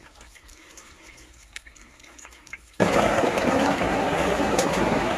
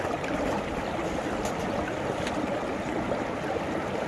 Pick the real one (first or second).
second